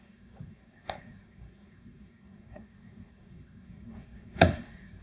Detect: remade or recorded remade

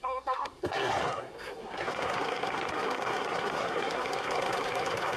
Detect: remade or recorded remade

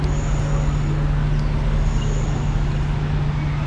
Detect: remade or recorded recorded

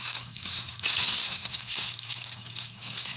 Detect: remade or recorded remade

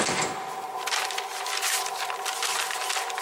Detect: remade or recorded recorded